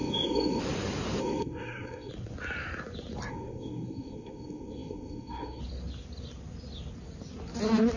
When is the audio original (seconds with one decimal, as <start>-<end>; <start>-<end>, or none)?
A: 0.6-1.2; 2.1-3.3; 5.6-8.0